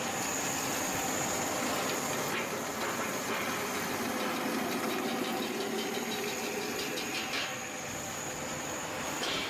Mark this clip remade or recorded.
recorded